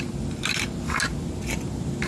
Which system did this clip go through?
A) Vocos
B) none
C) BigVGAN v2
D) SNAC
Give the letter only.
B